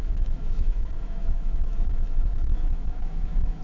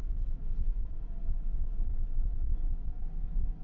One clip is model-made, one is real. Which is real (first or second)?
second